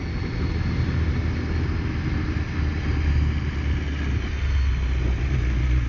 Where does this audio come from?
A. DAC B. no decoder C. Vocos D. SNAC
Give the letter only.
B